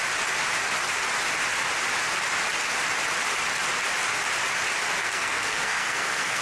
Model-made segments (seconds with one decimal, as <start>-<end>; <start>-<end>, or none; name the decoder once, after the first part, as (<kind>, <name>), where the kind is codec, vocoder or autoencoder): 5.0-6.4 (codec, SNAC)